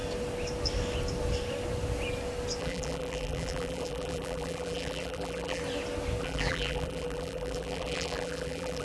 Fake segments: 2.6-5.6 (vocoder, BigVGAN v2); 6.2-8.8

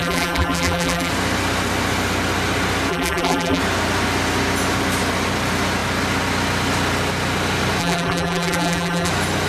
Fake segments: 0.0-1.1 (vocoder, BigVGAN v2); 2.9-3.6; 7.8-9.1

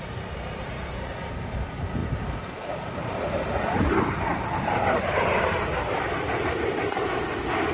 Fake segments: 0.0-7.7 (vocoder, BigVGAN v2)

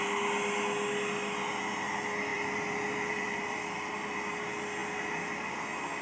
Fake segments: 2.3-3.9 (vocoder, BigVGAN v2)

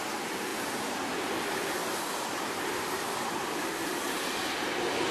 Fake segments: none

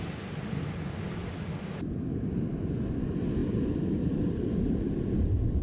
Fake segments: 3.4-5.6 (vocoder, BigVGAN v2)

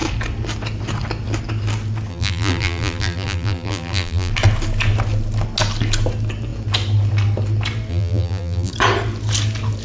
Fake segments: 2.1-4.3 (vocoder, BigVGAN v2); 7.9-8.7